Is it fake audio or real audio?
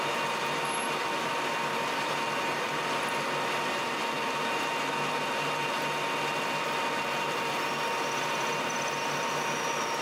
real